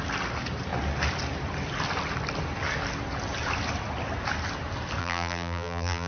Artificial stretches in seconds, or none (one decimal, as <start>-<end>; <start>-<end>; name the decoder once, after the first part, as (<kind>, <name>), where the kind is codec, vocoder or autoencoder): 5.0-6.1 (vocoder, BigVGAN v2)